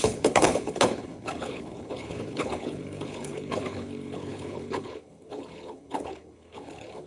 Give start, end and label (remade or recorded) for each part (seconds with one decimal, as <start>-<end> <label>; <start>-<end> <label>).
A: 0.0-7.1 remade